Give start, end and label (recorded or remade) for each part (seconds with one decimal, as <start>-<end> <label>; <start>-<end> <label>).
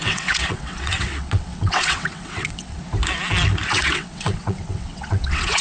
0.0-2.8 remade; 2.8-3.7 recorded; 3.7-5.6 remade